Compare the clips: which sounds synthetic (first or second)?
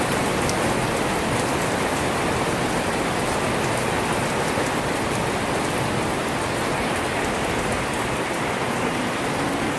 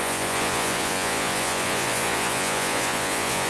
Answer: second